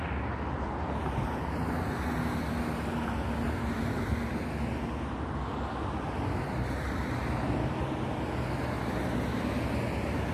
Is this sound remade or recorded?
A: recorded